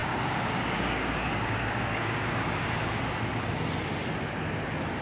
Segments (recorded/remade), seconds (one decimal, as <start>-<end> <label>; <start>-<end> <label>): 0.0-3.0 remade; 3.0-5.0 recorded